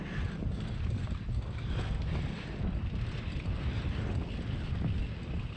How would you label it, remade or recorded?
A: recorded